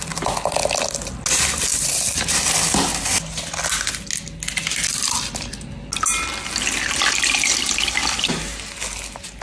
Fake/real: real